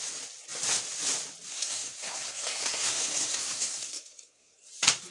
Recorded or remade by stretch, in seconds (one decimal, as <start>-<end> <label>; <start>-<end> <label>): 0.0-1.5 recorded; 1.5-4.6 remade; 4.6-5.1 recorded